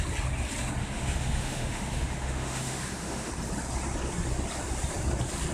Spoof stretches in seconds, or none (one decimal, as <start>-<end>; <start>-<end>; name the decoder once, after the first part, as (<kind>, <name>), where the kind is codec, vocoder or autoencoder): 0.8-3.3 (autoencoder, DAC-VAE)